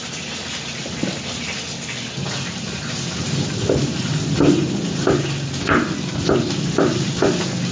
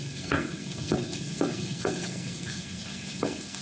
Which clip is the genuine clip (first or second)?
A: first